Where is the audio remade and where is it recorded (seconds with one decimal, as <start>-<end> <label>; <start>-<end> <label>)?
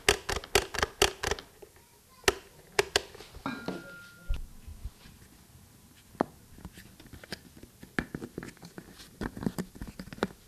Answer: 0.0-10.5 recorded